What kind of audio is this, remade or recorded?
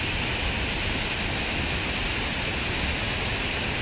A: recorded